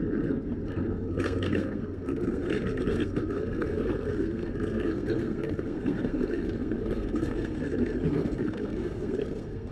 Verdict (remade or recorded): remade